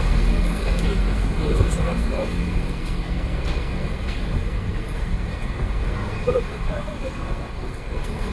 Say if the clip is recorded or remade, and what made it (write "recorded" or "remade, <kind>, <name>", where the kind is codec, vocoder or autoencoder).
remade, codec, SNAC